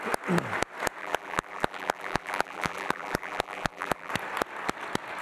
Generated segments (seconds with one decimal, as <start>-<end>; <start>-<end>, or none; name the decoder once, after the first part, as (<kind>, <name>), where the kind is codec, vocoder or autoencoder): 1.0-4.1 (vocoder, BigVGAN v2)